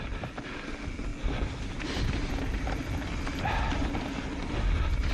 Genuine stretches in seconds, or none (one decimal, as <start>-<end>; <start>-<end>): 0.0-5.1